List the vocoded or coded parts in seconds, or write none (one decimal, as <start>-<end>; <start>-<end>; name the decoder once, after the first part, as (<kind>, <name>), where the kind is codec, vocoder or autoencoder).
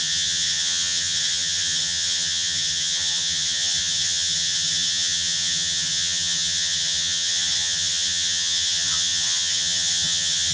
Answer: 0.0-10.5 (vocoder, HiFi-GAN)